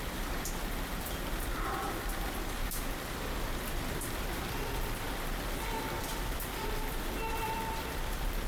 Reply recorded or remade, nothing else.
remade